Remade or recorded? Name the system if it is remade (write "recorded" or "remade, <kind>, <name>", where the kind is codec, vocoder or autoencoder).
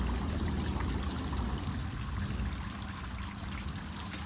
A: recorded